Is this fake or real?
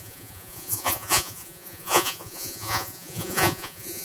fake